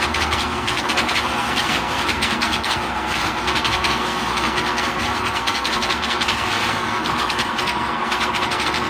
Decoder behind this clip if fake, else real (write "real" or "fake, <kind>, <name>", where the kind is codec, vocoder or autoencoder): fake, codec, SNAC